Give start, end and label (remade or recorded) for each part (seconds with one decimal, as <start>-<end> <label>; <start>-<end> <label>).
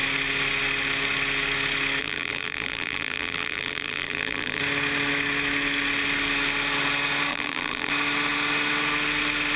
0.0-2.0 recorded; 2.0-4.6 remade; 4.6-7.3 recorded; 7.3-7.9 remade; 7.9-9.6 recorded